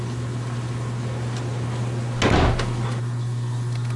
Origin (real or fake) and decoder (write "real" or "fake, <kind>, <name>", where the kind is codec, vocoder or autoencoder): real